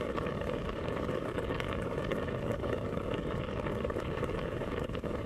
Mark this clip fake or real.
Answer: fake